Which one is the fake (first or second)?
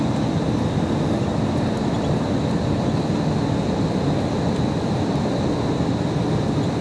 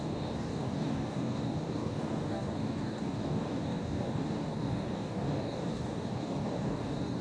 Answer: second